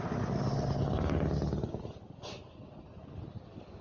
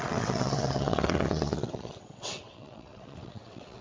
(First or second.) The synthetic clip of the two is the second